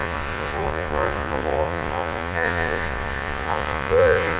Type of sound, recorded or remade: remade